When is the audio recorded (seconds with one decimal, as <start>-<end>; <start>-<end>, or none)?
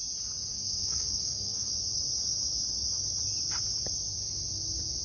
0.0-0.5; 1.7-5.0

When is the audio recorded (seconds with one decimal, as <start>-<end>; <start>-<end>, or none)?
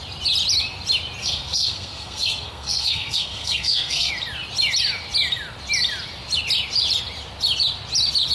0.0-1.2; 4.1-8.3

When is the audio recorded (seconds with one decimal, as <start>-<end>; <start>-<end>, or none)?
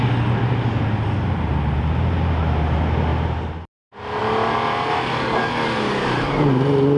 0.0-7.0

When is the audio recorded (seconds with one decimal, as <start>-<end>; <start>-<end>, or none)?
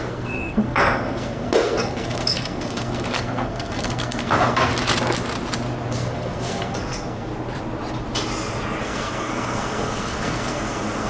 4.7-5.9; 7.3-8.8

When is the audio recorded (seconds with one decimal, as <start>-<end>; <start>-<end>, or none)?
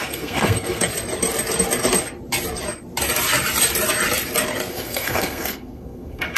0.9-4.7